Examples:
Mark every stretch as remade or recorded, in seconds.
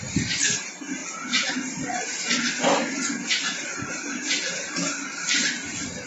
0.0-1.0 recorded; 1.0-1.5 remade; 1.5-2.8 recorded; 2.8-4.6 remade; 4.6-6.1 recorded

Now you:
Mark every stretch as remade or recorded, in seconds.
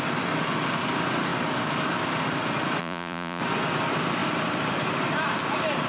0.0-2.8 recorded; 2.8-3.4 remade; 3.4-5.9 recorded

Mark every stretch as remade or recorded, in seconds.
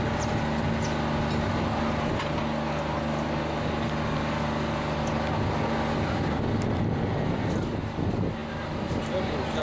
0.0-9.6 recorded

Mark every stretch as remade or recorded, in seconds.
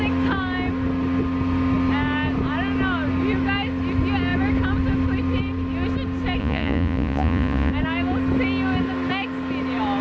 0.0-6.4 recorded; 6.4-7.7 remade; 7.7-10.0 recorded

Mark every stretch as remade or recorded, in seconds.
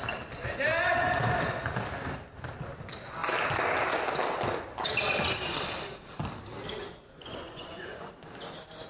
0.0-6.8 recorded; 6.8-8.1 remade; 8.1-8.9 recorded